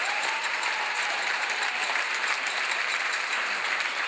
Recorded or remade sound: remade